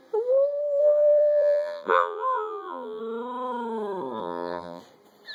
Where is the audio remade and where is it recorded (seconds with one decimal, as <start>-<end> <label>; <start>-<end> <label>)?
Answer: 0.0-0.8 recorded; 0.8-3.0 remade; 3.0-4.2 recorded; 4.2-4.8 remade; 4.8-5.3 recorded